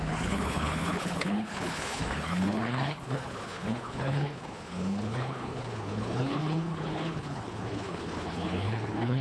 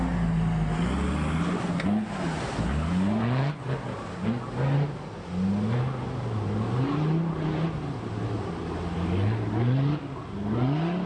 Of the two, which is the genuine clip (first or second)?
second